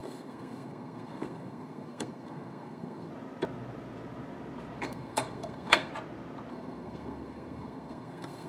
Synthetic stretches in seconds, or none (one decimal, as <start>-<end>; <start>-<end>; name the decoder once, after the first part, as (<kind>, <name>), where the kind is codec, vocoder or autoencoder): 0.0-3.1 (codec, SNAC); 4.8-5.9; 6.5-8.5